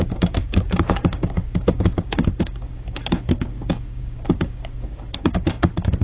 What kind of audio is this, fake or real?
fake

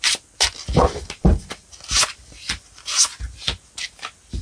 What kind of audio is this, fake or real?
real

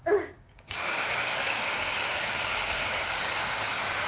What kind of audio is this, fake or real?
fake